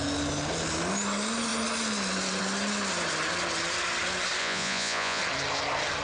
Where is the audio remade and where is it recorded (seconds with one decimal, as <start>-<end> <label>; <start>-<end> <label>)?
0.0-4.4 recorded; 4.4-5.2 remade; 5.2-6.0 recorded